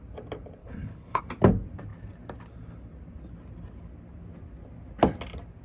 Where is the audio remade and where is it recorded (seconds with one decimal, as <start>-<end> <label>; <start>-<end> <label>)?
0.0-0.6 recorded; 0.6-1.2 remade; 1.2-5.6 recorded